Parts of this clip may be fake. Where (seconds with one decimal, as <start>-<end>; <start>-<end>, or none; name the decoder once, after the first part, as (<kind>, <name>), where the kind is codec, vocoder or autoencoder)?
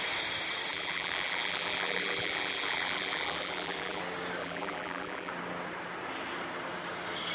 0.7-4.0 (vocoder, BigVGAN v2); 4.4-5.3